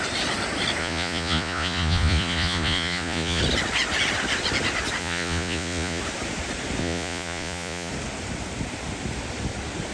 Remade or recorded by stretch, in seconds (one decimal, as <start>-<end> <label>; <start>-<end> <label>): 0.0-0.8 recorded; 0.8-3.4 remade; 3.4-5.0 recorded; 5.0-6.0 remade; 6.0-6.8 recorded; 6.8-7.9 remade; 7.9-9.9 recorded